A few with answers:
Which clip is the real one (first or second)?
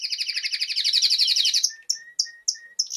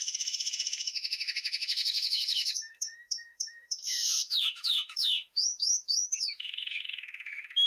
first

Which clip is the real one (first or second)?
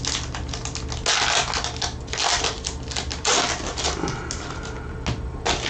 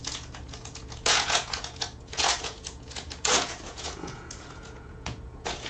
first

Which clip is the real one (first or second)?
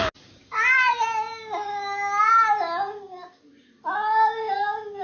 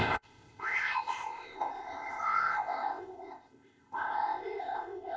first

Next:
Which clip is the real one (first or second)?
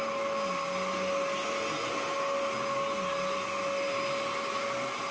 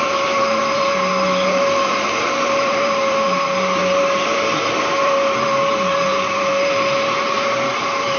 first